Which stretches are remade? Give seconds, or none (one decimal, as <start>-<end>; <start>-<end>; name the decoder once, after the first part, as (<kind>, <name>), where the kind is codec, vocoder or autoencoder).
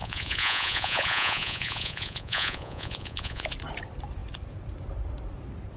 0.0-3.5 (vocoder, Vocos)